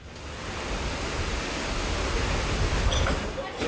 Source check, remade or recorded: recorded